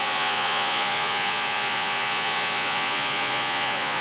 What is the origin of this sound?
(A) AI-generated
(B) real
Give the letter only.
A